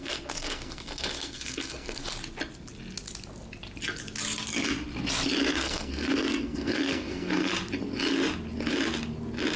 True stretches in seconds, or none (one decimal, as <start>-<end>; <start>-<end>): 2.0-5.5; 7.5-9.6